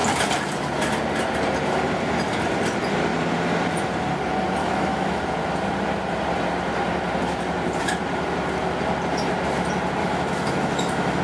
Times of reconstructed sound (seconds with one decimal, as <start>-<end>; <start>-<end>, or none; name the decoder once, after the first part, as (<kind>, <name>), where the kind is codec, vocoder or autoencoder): 4.6-5.2 (autoencoder, DAC-VAE); 10.0-11.2